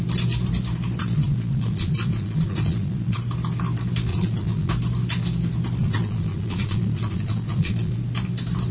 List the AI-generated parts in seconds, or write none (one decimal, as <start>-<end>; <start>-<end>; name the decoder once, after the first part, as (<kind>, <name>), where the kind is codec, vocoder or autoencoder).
1.0-3.2 (vocoder, Vocos); 4.1-4.7; 5.8-8.0